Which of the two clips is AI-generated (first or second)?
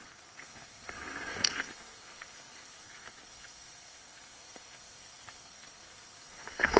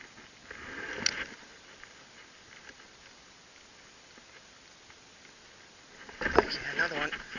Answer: first